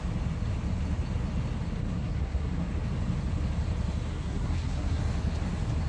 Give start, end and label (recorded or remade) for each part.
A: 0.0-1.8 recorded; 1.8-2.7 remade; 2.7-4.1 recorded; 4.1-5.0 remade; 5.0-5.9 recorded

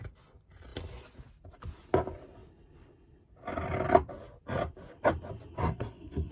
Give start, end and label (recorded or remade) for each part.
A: 0.0-5.6 recorded; 5.6-6.3 remade

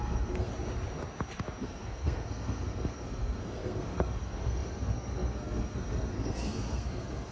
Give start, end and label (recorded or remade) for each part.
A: 0.0-0.5 remade; 0.5-1.6 recorded; 1.6-7.3 remade

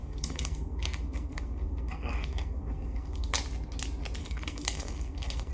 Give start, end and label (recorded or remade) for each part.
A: 0.0-3.3 remade; 3.3-4.2 recorded; 4.2-5.5 remade

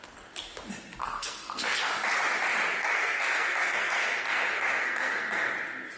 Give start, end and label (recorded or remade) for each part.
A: 0.0-1.0 recorded; 1.0-1.9 remade; 1.9-2.8 recorded; 2.8-5.5 remade; 5.5-6.0 recorded

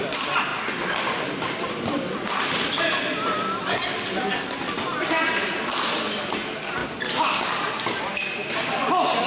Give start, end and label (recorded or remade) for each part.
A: 0.0-9.3 recorded

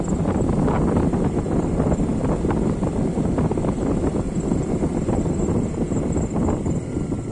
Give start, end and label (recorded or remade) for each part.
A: 0.0-7.3 recorded

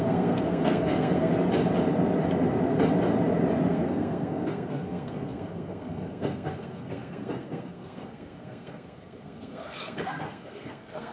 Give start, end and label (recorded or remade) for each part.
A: 0.0-1.3 remade; 1.3-3.7 recorded; 3.7-11.1 remade